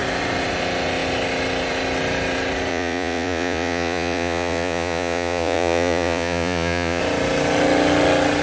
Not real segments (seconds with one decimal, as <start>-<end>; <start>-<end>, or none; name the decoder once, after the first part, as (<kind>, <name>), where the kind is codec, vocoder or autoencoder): 2.7-7.0 (vocoder, Vocos)

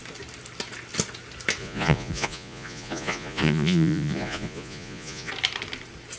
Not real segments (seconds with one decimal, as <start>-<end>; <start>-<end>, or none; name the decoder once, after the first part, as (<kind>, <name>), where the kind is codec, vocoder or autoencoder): 1.6-5.3 (vocoder, Vocos)

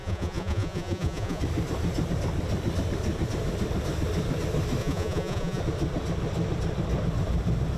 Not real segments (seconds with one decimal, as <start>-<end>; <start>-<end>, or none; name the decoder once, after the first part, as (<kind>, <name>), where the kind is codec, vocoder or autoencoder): 0.0-1.4 (vocoder, Vocos); 4.8-5.6

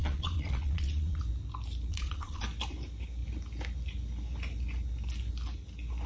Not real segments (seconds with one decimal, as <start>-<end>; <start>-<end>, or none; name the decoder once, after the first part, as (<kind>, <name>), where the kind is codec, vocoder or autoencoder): 0.0-1.2 (vocoder, Vocos); 1.9-2.4